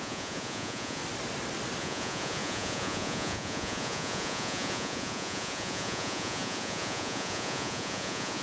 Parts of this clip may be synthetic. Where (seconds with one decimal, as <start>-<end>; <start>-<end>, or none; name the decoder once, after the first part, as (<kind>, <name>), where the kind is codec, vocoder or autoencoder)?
0.0-1.0 (vocoder, Vocos); 1.8-8.4